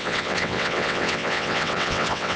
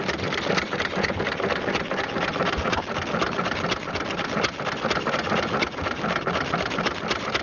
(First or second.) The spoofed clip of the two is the first